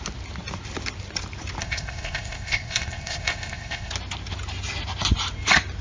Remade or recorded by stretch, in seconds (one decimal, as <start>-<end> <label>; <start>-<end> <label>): 0.0-1.6 recorded; 1.6-3.9 remade; 3.9-5.8 recorded